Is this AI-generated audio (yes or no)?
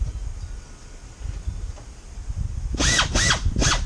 no